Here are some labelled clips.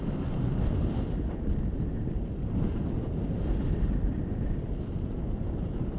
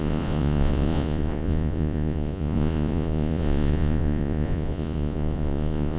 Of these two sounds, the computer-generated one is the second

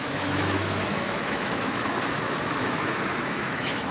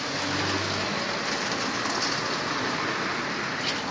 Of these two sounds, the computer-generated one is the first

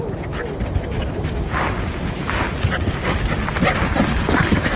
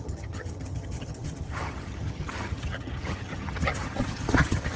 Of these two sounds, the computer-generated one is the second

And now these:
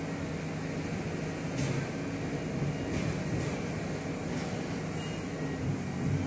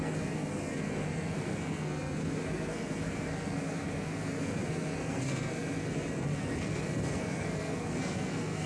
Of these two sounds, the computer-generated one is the second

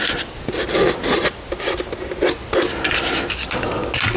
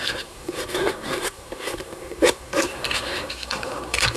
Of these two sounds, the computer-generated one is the second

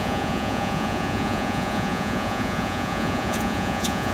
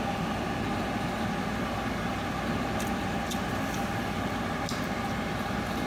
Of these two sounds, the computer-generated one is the first